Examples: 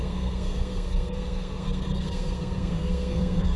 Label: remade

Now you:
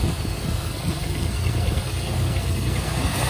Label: remade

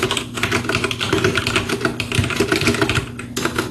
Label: recorded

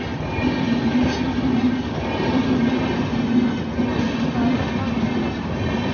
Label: recorded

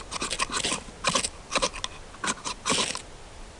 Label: recorded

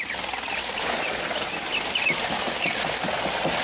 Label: recorded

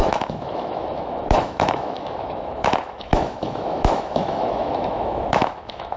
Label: remade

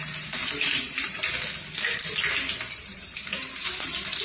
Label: recorded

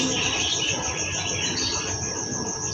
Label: recorded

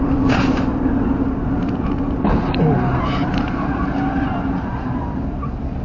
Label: recorded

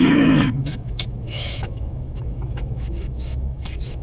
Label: remade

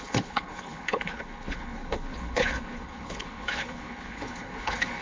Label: remade